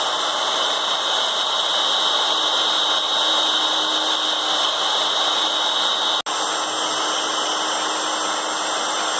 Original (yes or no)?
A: yes